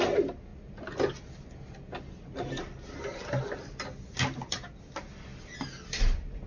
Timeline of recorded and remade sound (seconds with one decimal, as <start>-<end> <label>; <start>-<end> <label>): 0.0-6.5 recorded